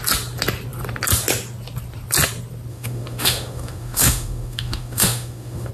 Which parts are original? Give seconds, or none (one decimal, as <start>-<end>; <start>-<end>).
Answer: 0.0-2.7